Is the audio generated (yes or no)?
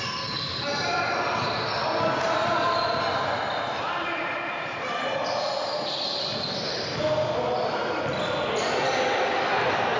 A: no